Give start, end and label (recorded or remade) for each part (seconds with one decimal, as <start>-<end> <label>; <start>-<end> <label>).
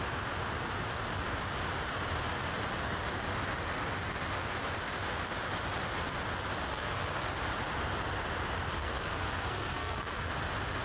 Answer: 0.0-6.7 recorded; 6.7-7.3 remade; 7.3-8.8 recorded; 8.8-10.3 remade; 10.3-10.8 recorded